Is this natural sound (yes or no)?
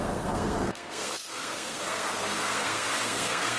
no